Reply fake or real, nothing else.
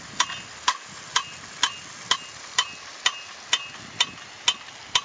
real